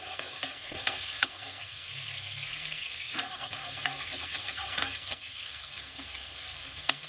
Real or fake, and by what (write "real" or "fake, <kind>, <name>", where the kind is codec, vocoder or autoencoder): fake, codec, SNAC